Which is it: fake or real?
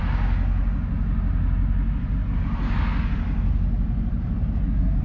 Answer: real